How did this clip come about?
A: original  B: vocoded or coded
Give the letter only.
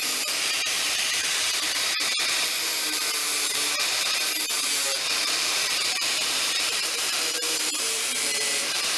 B